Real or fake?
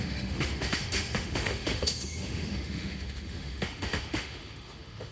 fake